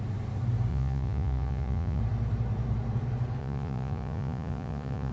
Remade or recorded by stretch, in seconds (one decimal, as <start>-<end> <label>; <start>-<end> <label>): 0.0-0.7 recorded; 0.7-2.0 remade; 2.0-3.4 recorded; 3.4-5.1 remade